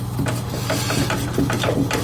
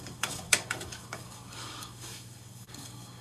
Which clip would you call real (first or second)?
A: first